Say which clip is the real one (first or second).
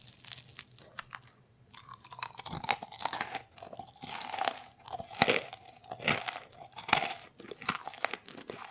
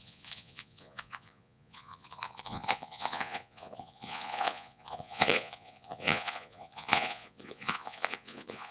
first